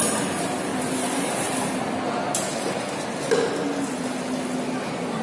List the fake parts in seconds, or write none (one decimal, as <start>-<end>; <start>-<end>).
none